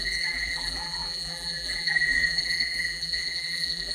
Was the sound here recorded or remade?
remade